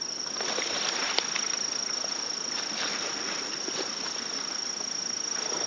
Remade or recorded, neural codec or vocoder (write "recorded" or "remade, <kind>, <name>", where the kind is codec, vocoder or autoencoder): recorded